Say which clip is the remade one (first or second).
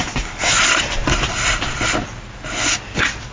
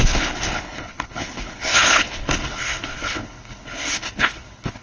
second